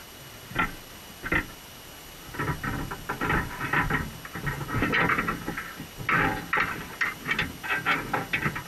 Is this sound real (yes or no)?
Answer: yes